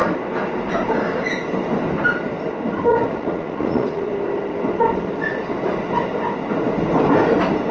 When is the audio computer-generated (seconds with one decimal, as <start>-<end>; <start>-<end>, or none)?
2.9-4.1

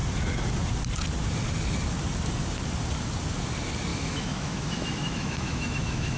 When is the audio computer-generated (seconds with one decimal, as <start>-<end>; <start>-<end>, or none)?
3.9-6.2

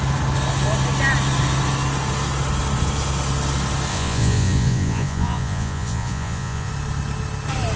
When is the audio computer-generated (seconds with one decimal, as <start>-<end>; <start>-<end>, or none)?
3.9-6.7

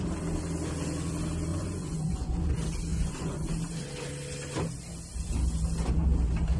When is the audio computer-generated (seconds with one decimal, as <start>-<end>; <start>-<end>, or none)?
1.5-2.5; 2.9-3.5

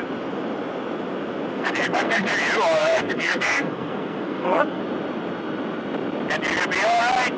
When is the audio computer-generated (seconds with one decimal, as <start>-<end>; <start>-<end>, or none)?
1.5-2.3; 2.8-4.8

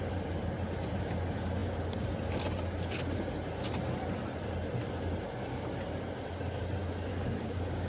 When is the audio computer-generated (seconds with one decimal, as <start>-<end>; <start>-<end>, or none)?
7.1-7.9

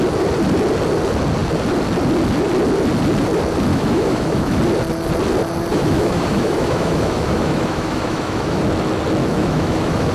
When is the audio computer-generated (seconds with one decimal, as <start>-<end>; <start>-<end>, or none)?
3.7-4.6; 5.7-8.6; 9.2-10.1